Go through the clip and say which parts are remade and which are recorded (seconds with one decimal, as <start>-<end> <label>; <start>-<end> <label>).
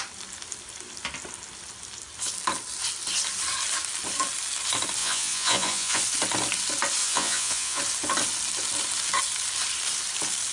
0.0-5.0 recorded; 5.0-6.0 remade; 6.0-7.0 recorded; 7.0-7.8 remade; 7.8-10.5 recorded